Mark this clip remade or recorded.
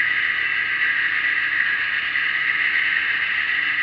recorded